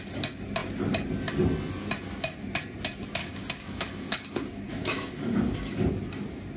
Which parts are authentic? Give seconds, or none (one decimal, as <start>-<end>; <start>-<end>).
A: 0.0-3.2; 5.9-6.6

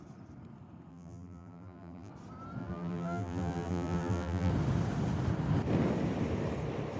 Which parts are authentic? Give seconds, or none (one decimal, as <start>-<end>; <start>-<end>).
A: 0.0-0.9; 2.1-2.6; 4.5-7.0

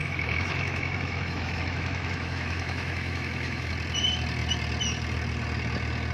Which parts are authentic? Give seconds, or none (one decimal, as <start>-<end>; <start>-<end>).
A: 3.7-6.1

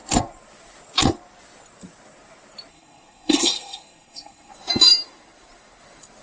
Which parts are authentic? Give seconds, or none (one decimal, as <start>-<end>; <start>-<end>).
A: 0.0-2.7; 4.5-6.2

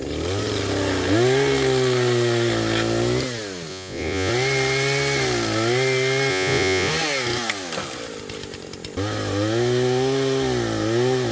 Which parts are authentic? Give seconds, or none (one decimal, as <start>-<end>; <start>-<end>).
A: 0.0-3.7; 4.3-6.3; 6.9-11.3